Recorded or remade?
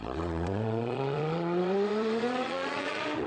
remade